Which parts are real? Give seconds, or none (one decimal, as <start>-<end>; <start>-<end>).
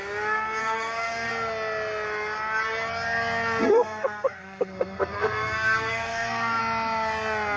0.0-0.6; 1.3-3.6; 6.6-7.6